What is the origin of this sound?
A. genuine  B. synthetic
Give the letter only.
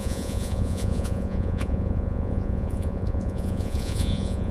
B